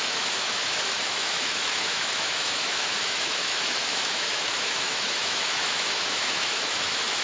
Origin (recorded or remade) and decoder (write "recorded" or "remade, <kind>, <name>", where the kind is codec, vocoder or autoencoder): remade, autoencoder, DAC-VAE